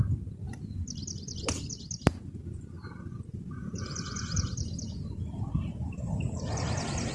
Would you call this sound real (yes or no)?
yes